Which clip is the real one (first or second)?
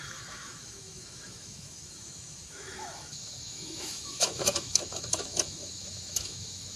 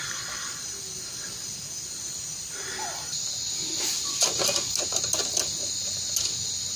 second